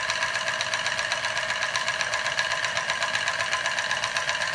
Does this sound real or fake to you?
real